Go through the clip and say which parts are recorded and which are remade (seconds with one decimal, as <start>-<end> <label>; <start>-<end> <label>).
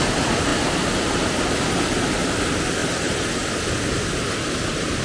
0.0-5.0 recorded